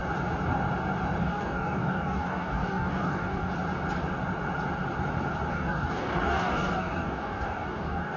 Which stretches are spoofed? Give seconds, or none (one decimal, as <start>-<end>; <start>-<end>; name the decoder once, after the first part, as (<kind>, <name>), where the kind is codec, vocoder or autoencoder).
1.2-3.5 (codec, DAC); 5.5-8.2